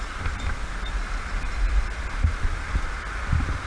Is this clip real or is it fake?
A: real